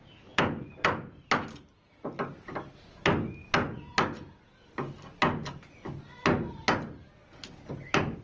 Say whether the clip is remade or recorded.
recorded